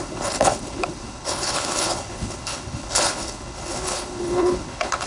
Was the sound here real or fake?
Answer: fake